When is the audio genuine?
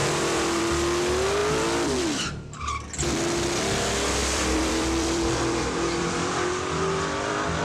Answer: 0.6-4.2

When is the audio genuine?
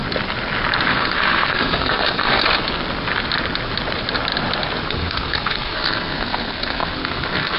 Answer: 0.0-0.9; 2.4-4.9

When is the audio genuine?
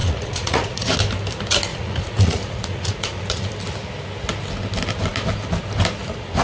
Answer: 0.9-1.7; 3.5-6.4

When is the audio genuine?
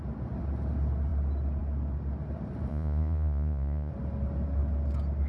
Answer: 0.0-2.7; 3.9-5.3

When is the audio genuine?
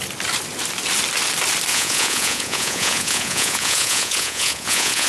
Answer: 0.0-1.7